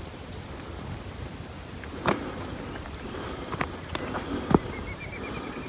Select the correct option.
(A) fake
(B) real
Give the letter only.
B